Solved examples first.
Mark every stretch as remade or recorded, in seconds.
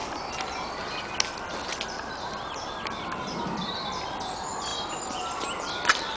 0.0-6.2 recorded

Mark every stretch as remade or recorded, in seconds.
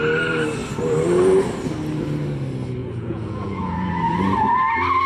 0.0-2.8 recorded; 2.8-3.9 remade; 3.9-5.1 recorded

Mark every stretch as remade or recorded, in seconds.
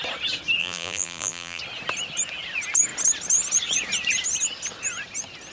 0.0-0.6 recorded; 0.6-1.6 remade; 1.6-5.5 recorded